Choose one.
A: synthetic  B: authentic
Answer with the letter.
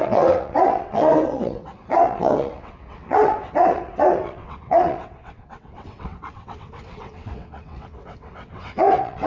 A